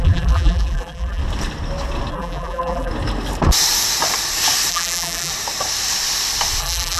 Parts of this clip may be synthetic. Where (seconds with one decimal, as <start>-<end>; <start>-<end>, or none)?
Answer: 0.0-1.2; 2.1-2.9; 4.7-5.3; 6.6-7.0

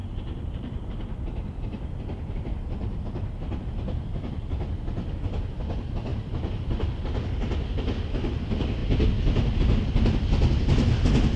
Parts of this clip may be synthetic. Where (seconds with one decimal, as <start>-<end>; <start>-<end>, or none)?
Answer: 0.0-3.0; 6.1-6.9

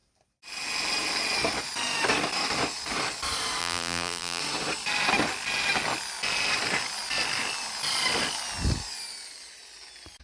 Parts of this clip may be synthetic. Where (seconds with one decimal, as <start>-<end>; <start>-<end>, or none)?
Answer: 3.6-4.4